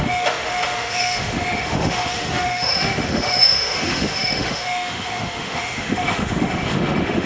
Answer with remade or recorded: remade